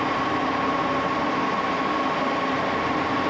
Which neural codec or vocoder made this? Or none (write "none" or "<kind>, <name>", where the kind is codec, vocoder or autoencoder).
none